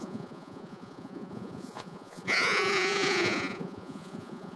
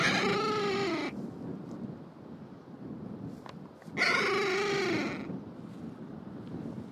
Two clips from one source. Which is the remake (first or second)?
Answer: first